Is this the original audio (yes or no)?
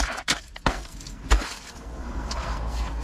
no